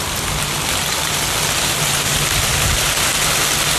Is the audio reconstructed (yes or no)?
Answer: no